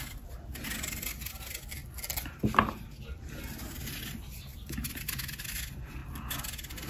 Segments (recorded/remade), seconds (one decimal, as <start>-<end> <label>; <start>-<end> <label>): 0.0-6.9 recorded